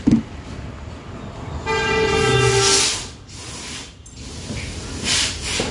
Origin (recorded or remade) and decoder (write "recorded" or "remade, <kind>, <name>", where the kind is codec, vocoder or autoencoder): recorded